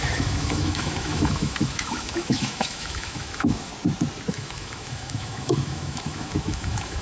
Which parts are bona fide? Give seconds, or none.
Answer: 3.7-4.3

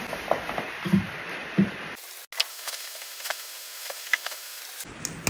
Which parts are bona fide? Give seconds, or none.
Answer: 0.0-2.5; 4.6-5.3

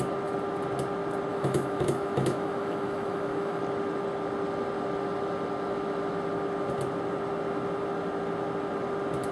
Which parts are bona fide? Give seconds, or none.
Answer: 0.0-1.3; 3.6-9.3

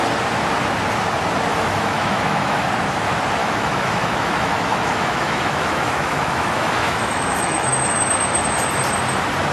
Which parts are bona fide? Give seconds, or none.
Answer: 0.0-1.5; 2.7-3.4; 8.1-9.5

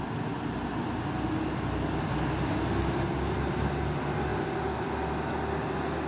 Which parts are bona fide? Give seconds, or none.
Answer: 0.0-6.1